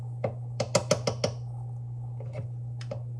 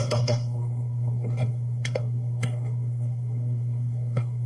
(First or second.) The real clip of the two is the first